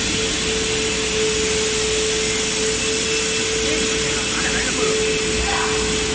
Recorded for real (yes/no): yes